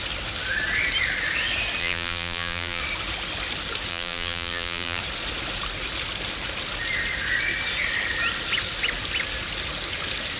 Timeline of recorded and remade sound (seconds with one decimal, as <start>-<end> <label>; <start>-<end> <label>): 0.0-1.8 recorded; 1.8-2.8 remade; 2.8-3.9 recorded; 3.9-5.0 remade; 5.0-10.4 recorded